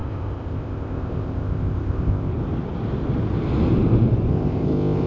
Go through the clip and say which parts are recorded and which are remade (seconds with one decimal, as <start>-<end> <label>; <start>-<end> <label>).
0.0-2.3 remade; 2.3-4.3 recorded; 4.3-5.1 remade

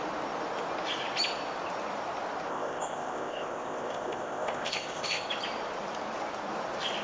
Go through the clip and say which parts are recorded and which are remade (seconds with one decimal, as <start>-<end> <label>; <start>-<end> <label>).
0.0-2.5 recorded; 2.5-5.3 remade; 5.3-7.0 recorded

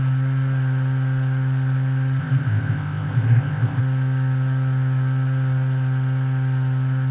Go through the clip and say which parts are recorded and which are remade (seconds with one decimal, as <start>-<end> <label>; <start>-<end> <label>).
0.0-2.2 recorded; 2.2-3.8 remade; 3.8-7.1 recorded

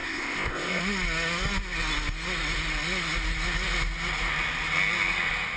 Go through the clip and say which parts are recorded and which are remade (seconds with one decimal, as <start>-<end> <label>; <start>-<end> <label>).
0.0-0.8 remade; 0.8-5.6 recorded

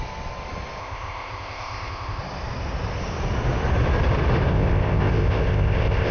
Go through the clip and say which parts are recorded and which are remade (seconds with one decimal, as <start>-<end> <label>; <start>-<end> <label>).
0.0-0.8 recorded; 0.8-2.2 remade; 2.2-4.5 recorded; 4.5-6.1 remade

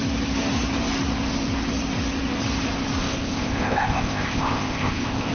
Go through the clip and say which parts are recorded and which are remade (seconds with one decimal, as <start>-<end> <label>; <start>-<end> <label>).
0.0-3.0 recorded; 3.0-5.3 remade

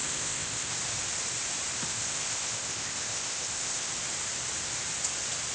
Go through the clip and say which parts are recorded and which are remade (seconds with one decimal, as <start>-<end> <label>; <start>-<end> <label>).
0.0-0.7 remade; 0.7-1.9 recorded; 1.9-3.9 remade; 3.9-5.5 recorded